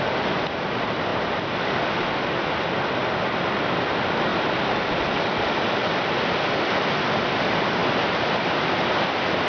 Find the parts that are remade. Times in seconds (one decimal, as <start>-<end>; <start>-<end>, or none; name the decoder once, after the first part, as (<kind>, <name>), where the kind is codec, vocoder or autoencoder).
7.8-9.5 (vocoder, BigVGAN v2)